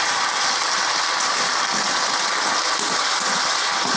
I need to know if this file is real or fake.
real